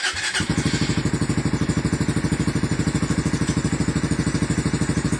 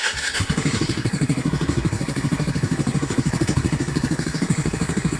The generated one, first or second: second